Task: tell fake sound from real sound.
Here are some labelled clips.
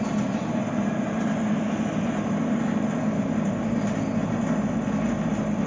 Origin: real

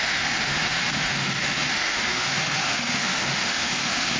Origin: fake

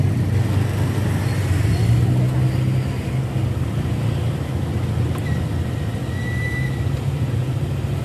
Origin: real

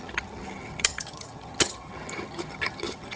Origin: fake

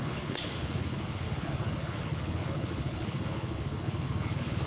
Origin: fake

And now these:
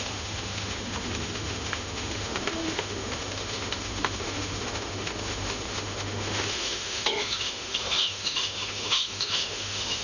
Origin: fake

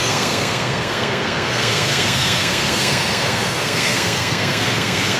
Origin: fake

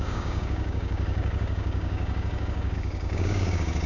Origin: fake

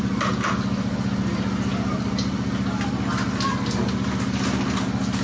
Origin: real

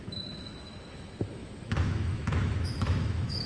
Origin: fake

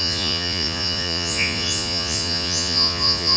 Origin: fake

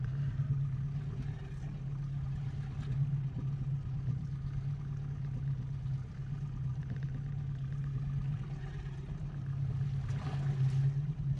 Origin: real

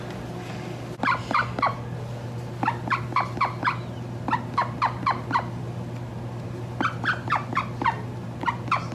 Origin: real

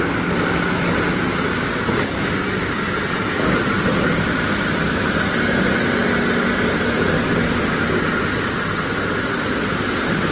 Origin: real